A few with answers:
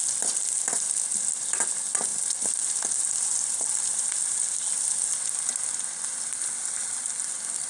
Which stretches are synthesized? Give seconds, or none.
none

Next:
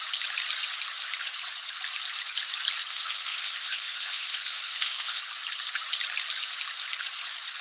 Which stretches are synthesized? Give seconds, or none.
2.9-5.2 (codec, ZipCodec)

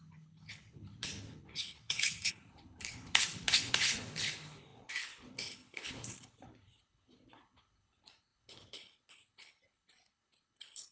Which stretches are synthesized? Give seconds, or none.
0.0-10.9 (codec, HILCodec)